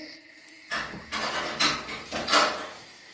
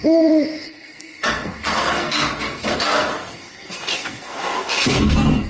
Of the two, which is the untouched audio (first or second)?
first